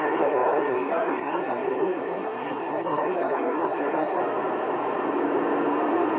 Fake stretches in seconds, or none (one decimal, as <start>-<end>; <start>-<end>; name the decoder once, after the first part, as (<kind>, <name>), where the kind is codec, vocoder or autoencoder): 0.0-4.2 (codec, SNAC)